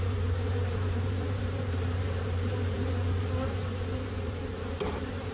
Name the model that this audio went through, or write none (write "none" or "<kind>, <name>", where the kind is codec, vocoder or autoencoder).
vocoder, BigVGAN v2